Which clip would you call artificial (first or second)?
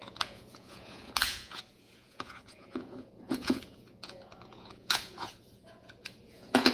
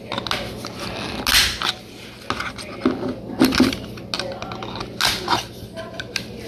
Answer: first